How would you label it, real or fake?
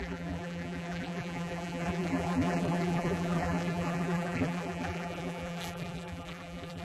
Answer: fake